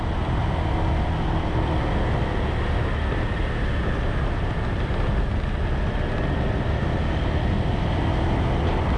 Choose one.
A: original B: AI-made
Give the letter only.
A